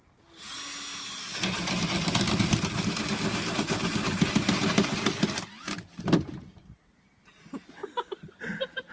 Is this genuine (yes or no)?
yes